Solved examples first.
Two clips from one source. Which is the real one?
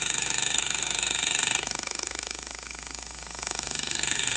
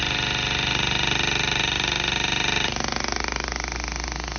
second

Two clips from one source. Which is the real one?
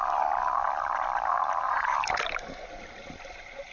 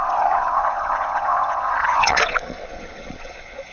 first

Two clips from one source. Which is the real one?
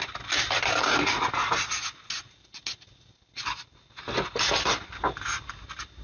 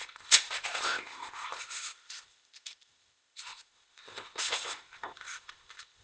first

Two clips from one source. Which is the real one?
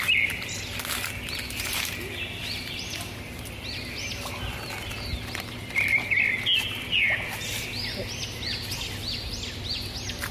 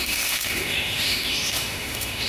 first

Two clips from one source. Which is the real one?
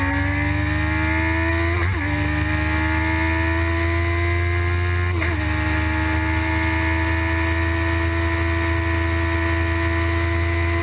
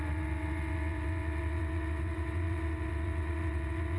first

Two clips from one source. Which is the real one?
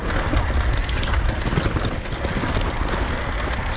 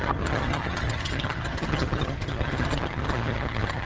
first